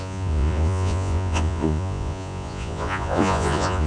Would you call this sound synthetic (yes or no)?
yes